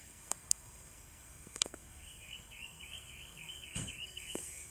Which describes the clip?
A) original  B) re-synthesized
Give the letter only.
B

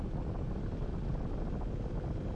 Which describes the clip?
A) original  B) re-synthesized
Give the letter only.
A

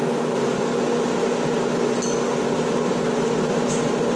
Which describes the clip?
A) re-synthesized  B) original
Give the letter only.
B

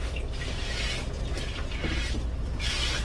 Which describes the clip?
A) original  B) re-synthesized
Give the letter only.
A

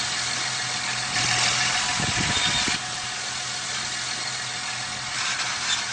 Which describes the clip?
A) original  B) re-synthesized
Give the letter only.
A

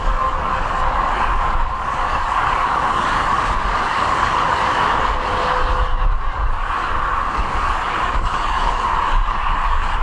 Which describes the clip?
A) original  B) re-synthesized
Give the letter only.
B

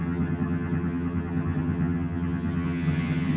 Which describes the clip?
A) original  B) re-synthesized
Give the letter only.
B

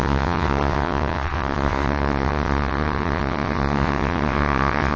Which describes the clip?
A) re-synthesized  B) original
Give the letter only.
A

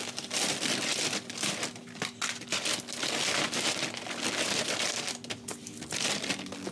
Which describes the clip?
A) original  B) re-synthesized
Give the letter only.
A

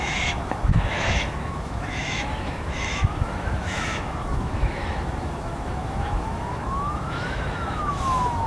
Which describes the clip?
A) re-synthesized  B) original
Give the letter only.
A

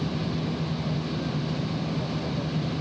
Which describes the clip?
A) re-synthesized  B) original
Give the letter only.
B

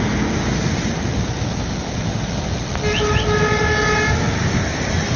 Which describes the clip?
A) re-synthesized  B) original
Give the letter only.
B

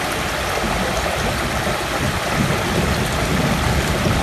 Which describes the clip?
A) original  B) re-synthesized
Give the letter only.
A